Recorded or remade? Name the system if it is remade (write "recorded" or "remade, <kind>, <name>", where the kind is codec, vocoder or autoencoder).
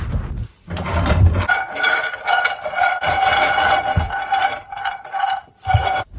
recorded